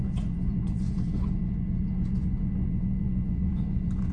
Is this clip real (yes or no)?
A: no